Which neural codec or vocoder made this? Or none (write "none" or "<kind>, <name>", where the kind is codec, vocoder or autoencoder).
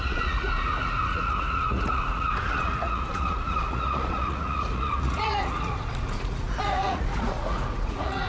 vocoder, Vocos